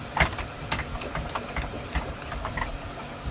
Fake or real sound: real